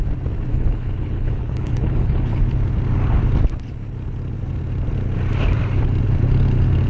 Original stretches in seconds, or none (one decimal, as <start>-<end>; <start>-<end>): 0.0-0.5; 2.4-6.9